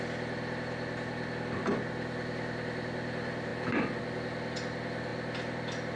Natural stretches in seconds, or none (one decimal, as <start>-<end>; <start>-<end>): 0.0-6.0

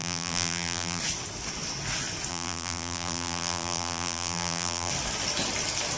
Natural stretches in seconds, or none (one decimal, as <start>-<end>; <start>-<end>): 1.0-2.3; 4.9-6.0

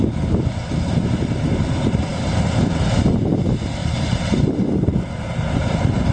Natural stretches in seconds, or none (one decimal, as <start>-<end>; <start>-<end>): 0.0-3.8

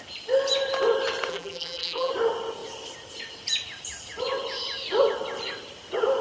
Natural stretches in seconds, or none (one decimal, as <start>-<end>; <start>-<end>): 0.0-1.3; 2.1-6.2

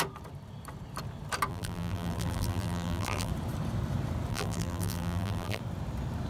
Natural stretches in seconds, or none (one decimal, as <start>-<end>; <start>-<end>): 0.0-1.5; 3.3-4.3; 5.6-6.3